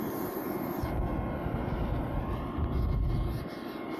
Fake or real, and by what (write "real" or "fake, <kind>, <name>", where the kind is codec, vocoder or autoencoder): real